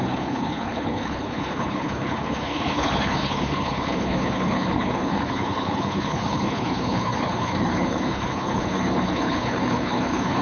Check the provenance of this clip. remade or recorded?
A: remade